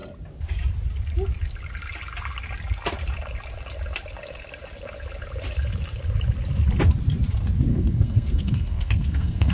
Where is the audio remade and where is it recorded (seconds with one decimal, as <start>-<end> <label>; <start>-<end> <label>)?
0.0-7.7 recorded; 7.7-9.5 remade